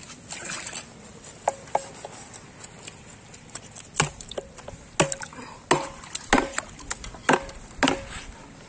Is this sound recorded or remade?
recorded